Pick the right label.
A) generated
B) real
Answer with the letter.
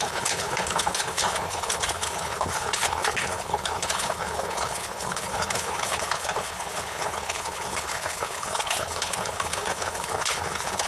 A